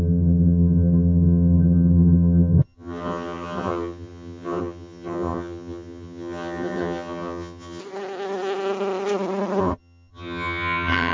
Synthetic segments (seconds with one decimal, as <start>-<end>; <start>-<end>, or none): 0.0-7.8; 9.6-11.1